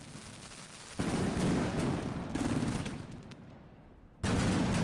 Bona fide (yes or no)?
yes